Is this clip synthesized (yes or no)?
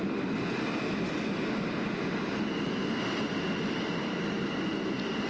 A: no